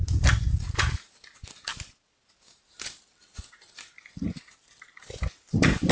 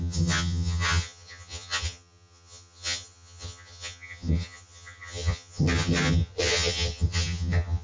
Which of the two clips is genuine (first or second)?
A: first